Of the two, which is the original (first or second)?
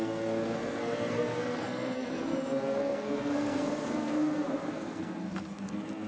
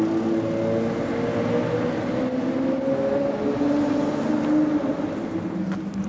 second